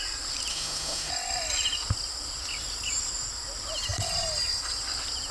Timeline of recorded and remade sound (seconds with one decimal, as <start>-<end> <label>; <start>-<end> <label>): 0.0-0.5 recorded; 0.5-1.1 remade; 1.1-5.3 recorded